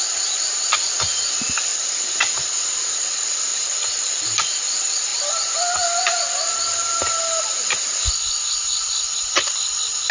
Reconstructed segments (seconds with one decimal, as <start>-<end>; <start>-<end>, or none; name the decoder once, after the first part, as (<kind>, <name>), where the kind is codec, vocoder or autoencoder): 1.7-2.4 (vocoder, BigVGAN v2); 3.5-4.6